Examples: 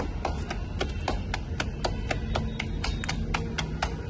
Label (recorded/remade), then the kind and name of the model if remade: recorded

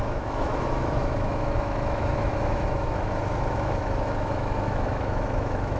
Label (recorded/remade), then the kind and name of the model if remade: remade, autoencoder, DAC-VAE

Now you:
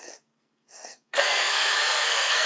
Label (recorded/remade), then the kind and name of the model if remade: remade, codec, SNAC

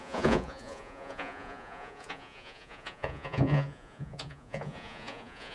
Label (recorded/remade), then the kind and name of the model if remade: remade, vocoder, Vocos